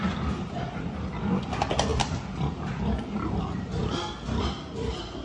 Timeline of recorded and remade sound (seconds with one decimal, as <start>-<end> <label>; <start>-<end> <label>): 0.0-5.2 recorded